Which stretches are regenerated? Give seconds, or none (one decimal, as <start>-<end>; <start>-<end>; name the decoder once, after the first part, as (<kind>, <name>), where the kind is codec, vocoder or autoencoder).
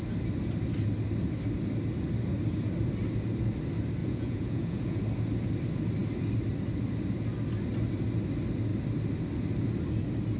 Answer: 4.0-5.0 (vocoder, Vocos)